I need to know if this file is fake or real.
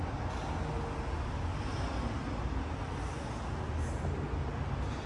real